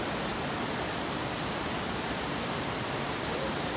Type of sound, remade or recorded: recorded